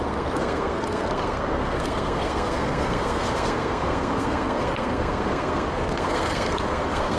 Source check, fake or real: fake